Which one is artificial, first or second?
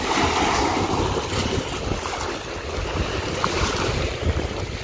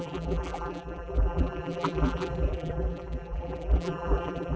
second